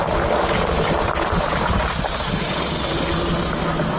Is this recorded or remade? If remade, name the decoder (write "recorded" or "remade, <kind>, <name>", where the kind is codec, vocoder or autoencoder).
recorded